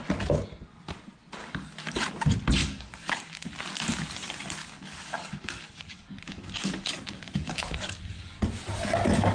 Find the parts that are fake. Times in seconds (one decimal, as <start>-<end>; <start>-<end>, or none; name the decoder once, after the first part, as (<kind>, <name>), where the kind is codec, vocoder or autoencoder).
1.4-2.1 (codec, DAC); 2.6-3.5; 4.6-8.4